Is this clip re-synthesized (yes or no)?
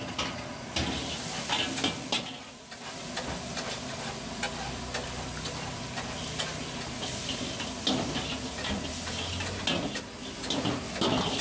no